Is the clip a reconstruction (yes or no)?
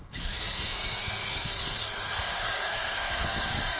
yes